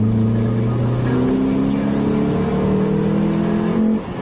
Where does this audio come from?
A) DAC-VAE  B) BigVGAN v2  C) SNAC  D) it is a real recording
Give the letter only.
D